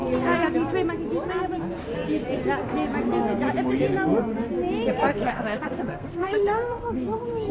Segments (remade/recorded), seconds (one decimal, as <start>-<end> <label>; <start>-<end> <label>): 0.0-5.1 recorded; 5.1-7.5 remade